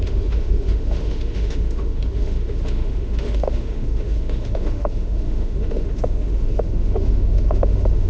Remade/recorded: remade